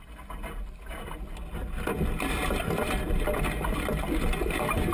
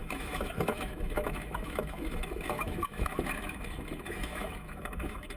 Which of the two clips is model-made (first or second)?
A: second